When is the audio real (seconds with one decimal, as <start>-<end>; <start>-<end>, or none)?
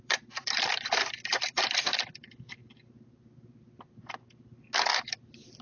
2.6-5.0